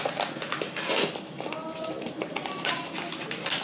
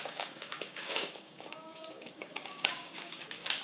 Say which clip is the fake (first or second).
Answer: second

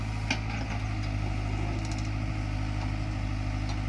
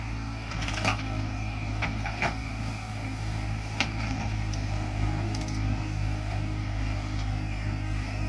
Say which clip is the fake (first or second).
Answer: second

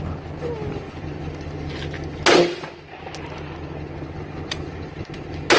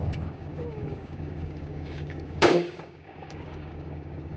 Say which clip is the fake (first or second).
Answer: second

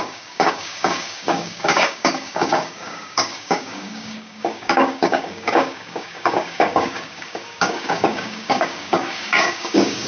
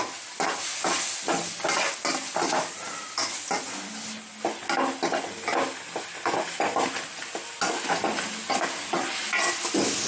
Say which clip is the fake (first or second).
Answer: first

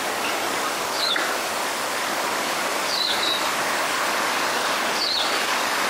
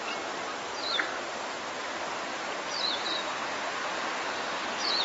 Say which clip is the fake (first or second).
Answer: first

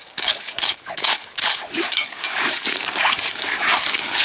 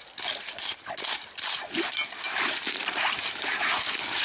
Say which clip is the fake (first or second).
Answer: first